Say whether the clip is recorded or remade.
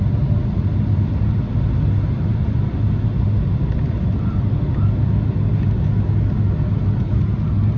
recorded